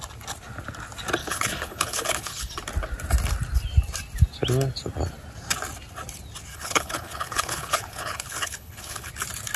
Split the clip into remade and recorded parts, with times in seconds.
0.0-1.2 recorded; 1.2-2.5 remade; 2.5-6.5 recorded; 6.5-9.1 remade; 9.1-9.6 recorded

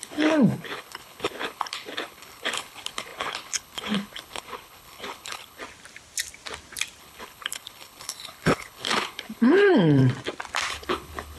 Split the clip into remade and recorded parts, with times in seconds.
0.0-5.6 remade; 5.6-7.0 recorded; 7.0-10.0 remade; 10.0-10.7 recorded; 10.7-11.4 remade

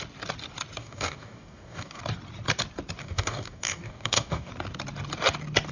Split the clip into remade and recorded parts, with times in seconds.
0.0-0.8 recorded; 0.8-2.0 remade; 2.0-3.0 recorded; 3.0-4.5 remade; 4.5-5.7 recorded

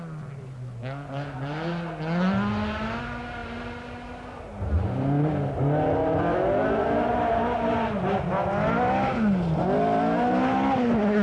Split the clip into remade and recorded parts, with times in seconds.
0.0-11.2 recorded

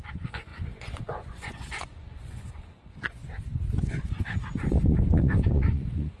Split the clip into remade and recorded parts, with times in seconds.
0.0-3.2 remade; 3.2-3.8 recorded; 3.8-6.2 remade

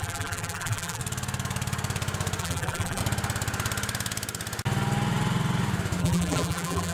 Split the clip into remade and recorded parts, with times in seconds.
0.0-1.0 remade; 1.0-2.4 recorded; 2.4-3.0 remade; 3.0-6.0 recorded; 6.0-6.9 remade

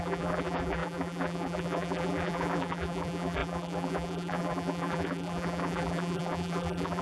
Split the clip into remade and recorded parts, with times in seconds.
0.0-7.0 remade

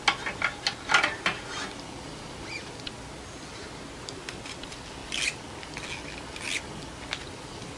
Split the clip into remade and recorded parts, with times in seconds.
0.0-7.8 recorded